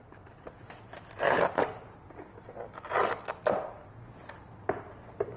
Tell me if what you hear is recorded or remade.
recorded